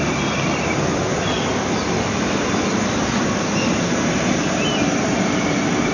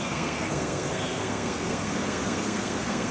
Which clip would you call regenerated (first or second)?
second